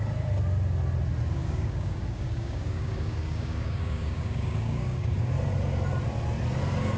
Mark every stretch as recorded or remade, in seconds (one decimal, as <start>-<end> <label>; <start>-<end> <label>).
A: 0.0-1.4 recorded; 1.4-5.3 remade; 5.3-7.0 recorded